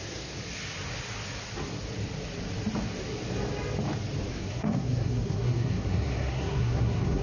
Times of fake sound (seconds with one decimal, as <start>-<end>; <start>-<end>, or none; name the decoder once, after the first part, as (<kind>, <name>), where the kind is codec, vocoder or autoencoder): 0.0-0.4 (codec, SNAC); 4.3-7.2